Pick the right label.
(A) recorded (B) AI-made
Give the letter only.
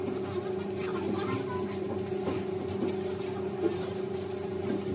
A